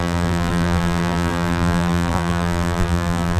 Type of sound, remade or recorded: remade